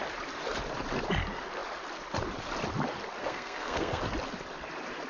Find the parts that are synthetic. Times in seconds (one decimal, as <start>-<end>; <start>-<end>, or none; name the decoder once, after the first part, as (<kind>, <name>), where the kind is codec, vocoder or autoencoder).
3.2-4.0 (codec, SNAC)